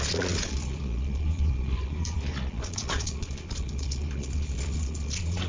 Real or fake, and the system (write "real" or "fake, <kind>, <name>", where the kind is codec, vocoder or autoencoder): fake, vocoder, Vocos